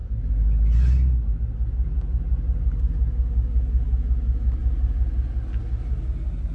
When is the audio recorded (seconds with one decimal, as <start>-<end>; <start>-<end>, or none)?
0.0-6.5